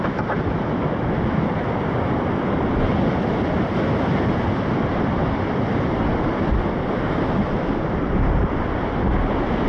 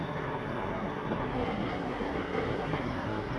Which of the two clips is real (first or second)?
first